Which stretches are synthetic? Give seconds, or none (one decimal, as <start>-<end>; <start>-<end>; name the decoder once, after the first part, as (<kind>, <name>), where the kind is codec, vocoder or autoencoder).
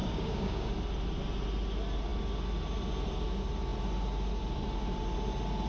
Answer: 0.0-0.7 (codec, DAC)